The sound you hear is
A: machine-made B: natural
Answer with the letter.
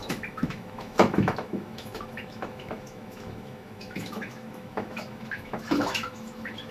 A